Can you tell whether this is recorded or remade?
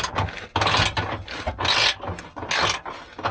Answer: recorded